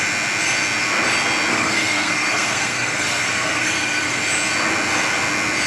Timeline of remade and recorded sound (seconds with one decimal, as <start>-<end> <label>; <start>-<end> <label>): 0.0-1.5 recorded; 1.5-4.2 remade; 4.2-5.7 recorded